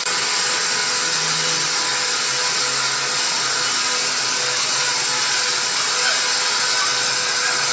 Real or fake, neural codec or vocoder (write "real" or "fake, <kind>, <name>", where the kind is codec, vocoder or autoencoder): real